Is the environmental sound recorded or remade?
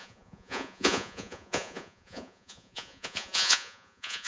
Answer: remade